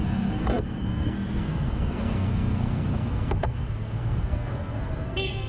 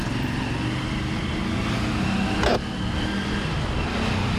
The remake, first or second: first